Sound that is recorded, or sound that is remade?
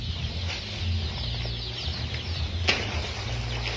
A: recorded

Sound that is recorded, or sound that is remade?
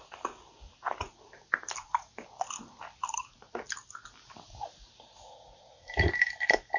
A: recorded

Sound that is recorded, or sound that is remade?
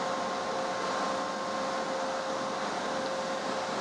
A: recorded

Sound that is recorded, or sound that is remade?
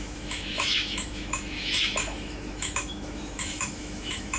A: remade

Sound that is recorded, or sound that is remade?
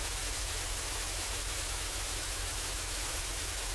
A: remade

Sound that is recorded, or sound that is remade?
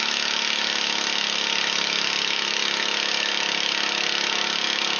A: remade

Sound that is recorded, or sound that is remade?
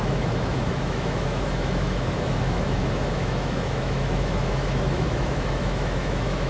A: remade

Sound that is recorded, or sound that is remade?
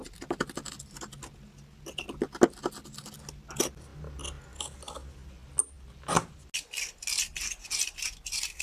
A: recorded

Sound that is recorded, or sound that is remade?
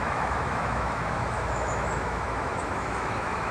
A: remade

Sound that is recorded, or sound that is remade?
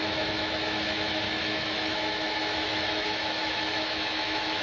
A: remade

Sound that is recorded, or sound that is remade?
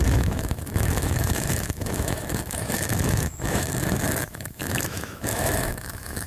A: remade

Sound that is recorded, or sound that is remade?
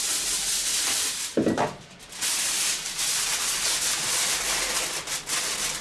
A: recorded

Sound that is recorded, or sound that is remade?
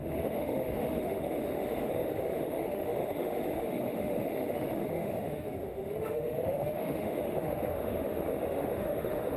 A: remade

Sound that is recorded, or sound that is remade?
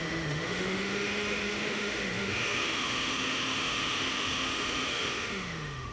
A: remade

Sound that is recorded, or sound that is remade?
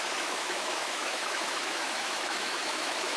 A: remade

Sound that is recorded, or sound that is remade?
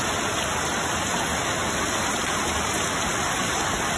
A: recorded